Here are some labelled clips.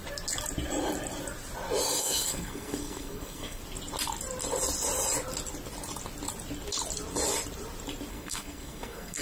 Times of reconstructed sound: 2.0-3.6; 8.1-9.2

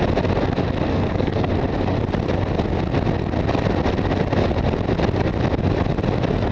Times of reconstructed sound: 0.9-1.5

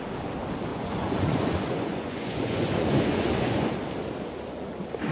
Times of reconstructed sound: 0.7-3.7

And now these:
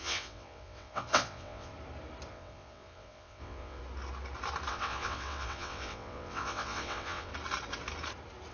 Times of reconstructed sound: 0.0-1.7; 2.3-3.8; 4.7-7.3